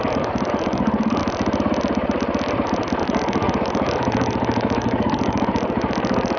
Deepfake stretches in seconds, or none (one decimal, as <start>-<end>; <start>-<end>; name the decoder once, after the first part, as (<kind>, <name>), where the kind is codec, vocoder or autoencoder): 0.0-1.2 (codec, DAC); 3.0-6.4

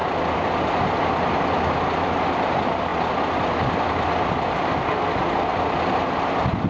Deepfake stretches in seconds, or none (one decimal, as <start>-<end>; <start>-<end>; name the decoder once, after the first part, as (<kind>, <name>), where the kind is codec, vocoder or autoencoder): none

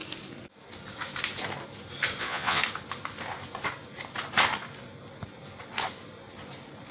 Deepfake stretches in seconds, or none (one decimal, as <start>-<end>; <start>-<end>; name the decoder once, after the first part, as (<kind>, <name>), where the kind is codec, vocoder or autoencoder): 2.2-2.6 (vocoder, Vocos)